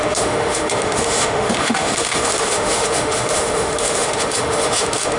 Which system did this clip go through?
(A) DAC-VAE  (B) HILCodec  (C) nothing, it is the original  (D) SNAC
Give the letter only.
A